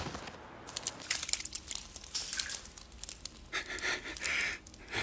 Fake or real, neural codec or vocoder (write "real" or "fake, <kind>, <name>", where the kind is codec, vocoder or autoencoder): real